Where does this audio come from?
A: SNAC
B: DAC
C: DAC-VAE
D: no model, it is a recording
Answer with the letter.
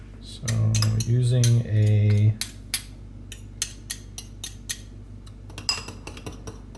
D